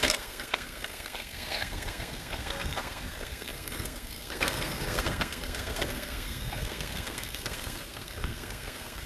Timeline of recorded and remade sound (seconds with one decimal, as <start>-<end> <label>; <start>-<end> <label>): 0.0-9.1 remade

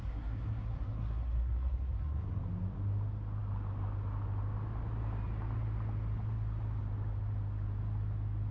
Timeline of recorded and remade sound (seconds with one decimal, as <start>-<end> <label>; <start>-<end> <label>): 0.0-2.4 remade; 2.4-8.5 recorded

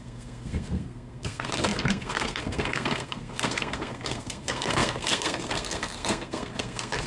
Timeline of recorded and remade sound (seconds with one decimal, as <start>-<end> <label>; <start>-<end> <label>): 0.0-7.1 remade

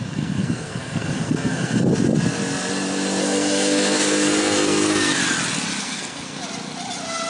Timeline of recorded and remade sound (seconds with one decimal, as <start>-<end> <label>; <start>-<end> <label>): 0.0-1.9 remade; 1.9-3.2 recorded; 3.2-5.2 remade; 5.2-5.8 recorded; 5.8-6.4 remade; 6.4-7.3 recorded